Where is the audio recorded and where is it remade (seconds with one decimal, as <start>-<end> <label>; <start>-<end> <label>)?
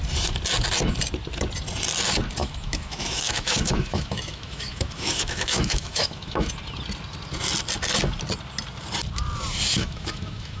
0.0-2.4 recorded; 2.4-6.5 remade; 6.5-9.7 recorded; 9.7-10.6 remade